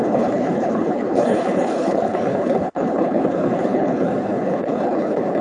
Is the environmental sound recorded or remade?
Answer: remade